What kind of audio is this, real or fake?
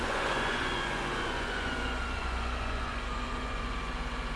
fake